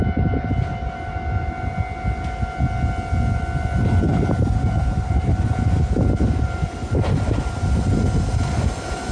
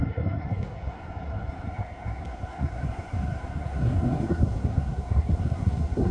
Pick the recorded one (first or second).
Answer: first